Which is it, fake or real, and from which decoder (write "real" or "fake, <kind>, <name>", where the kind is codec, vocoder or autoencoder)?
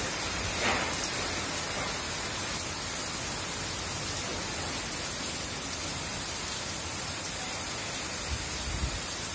real